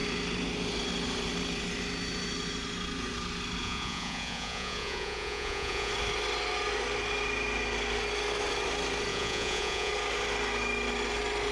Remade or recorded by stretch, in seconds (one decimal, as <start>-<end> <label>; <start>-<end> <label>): 0.0-3.6 recorded; 3.6-5.9 remade; 5.9-9.1 recorded; 9.1-9.9 remade; 9.9-11.5 recorded